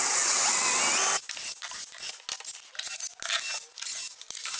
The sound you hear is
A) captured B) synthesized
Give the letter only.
A